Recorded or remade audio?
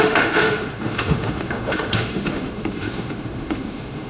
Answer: remade